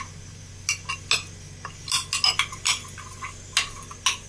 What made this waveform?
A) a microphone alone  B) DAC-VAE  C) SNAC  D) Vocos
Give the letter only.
A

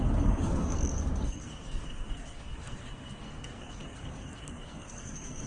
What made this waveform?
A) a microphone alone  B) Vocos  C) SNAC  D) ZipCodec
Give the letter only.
C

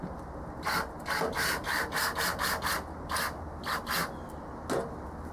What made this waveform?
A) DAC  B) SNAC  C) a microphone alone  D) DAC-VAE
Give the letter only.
C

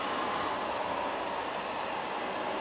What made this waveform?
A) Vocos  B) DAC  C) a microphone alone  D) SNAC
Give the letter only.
C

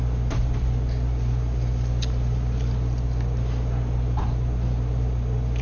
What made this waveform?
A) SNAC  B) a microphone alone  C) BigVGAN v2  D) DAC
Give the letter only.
B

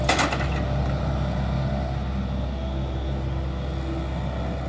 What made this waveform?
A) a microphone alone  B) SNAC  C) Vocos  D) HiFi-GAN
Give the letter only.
A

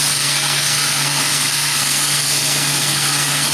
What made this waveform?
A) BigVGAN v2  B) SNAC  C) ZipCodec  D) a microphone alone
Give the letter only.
B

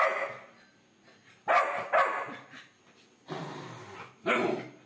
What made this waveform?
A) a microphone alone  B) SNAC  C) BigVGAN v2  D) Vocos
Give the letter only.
A